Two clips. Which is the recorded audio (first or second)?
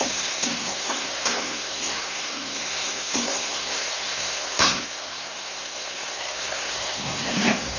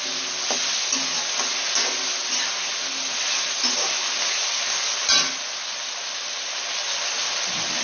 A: second